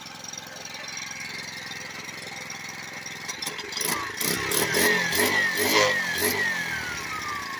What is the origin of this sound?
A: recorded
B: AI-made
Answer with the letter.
A